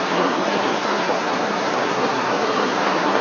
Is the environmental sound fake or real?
fake